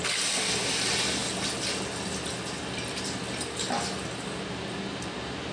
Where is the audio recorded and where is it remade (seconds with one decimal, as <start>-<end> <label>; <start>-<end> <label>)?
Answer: 0.0-5.5 recorded